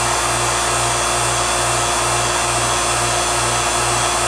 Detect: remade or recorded recorded